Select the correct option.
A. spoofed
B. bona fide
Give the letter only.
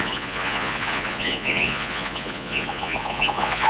A